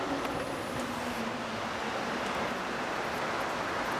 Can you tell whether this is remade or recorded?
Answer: recorded